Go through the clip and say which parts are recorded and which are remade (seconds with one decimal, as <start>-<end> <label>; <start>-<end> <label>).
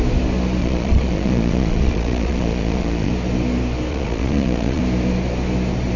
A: 0.0-0.6 recorded; 0.6-3.1 remade; 3.1-3.9 recorded; 3.9-4.8 remade; 4.8-6.0 recorded